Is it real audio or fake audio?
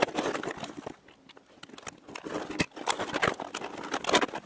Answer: real